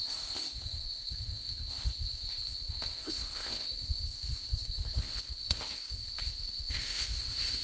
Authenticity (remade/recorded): remade